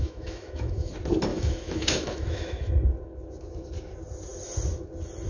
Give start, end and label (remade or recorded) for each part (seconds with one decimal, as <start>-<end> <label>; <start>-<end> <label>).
0.0-0.9 remade; 0.9-1.3 recorded; 1.3-2.7 remade; 2.7-5.3 recorded